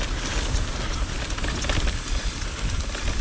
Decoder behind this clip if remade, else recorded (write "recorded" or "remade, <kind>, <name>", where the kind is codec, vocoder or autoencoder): recorded